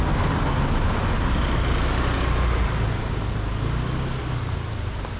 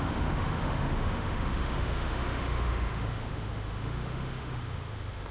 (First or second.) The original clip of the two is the first